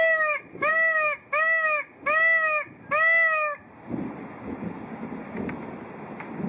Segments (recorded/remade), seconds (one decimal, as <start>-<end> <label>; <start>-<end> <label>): 0.0-6.5 recorded